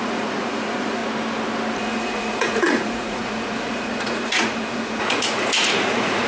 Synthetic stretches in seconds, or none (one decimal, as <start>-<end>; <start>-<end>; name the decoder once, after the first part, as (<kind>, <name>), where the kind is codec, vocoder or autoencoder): 0.0-1.0 (vocoder, Vocos); 1.8-6.3